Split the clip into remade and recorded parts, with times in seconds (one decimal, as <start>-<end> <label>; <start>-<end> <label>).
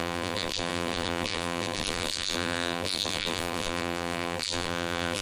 0.0-5.2 remade